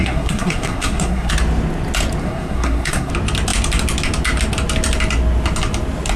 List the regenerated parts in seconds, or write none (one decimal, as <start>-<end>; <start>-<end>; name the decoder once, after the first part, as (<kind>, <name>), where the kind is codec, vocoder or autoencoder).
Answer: 0.0-1.3 (codec, SNAC); 2.2-3.1